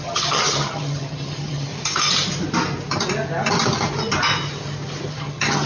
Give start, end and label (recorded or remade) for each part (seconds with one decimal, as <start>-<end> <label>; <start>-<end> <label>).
0.0-1.7 remade; 1.7-5.1 recorded; 5.1-5.7 remade